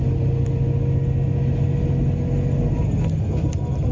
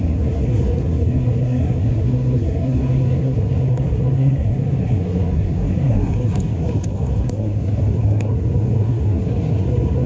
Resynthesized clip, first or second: second